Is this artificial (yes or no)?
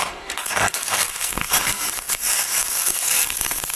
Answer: yes